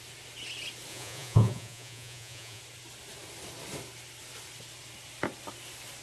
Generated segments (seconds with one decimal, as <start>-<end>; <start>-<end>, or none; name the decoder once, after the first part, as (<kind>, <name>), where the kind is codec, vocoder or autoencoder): 0.9-2.6 (vocoder, Vocos)